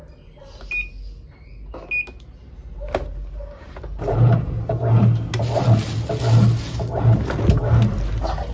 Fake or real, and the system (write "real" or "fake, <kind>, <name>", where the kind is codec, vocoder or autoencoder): real